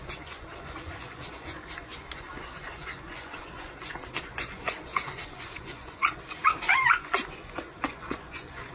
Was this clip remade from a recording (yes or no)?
yes